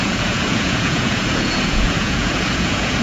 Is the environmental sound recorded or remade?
remade